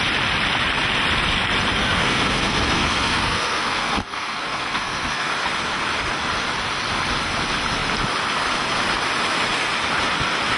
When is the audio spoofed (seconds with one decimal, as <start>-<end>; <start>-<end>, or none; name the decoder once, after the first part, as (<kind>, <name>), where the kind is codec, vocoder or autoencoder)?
1.8-5.3 (codec, SNAC)